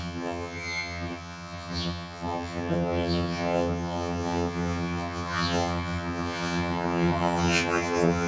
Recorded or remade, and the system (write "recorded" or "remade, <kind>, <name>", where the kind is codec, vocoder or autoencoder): remade, vocoder, HiFi-GAN